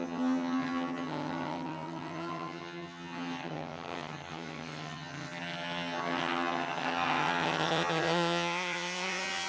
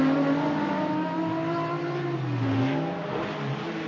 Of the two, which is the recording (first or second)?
second